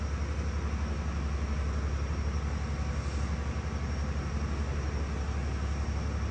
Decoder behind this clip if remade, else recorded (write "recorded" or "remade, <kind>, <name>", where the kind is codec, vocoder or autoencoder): recorded